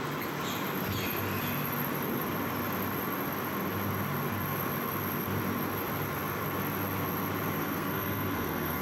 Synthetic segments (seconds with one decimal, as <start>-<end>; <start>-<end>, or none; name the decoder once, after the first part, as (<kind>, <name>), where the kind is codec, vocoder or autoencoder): 7.6-8.8 (codec, SNAC)